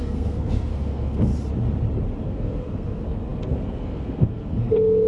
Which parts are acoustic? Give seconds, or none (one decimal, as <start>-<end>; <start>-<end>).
1.3-2.2